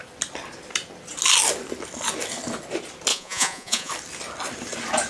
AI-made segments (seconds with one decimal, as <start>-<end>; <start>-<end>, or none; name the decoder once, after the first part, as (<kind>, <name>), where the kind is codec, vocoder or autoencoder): 3.1-3.9 (vocoder, Vocos)